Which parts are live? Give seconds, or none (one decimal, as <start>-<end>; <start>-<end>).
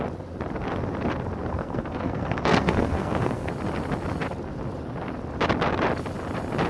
0.0-1.5; 3.5-6.7